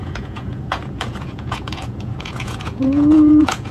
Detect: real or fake fake